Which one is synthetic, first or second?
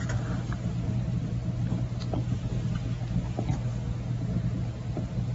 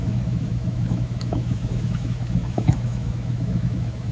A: second